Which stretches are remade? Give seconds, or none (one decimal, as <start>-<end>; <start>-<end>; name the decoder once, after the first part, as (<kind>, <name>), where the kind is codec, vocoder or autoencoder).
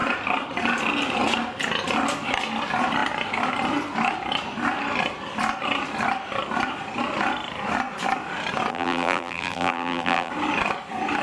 8.7-10.3 (vocoder, BigVGAN v2)